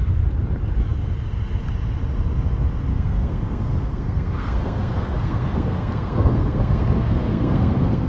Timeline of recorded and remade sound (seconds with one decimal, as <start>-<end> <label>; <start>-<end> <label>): 0.0-2.9 recorded; 2.9-8.1 remade